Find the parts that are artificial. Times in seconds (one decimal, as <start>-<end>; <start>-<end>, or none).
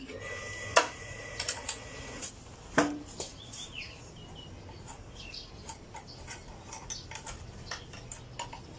0.7-2.3; 3.3-4.1; 4.9-5.5